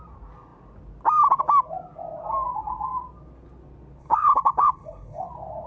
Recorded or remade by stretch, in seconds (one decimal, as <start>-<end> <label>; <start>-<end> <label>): 0.0-4.0 recorded; 4.0-5.3 remade; 5.3-5.7 recorded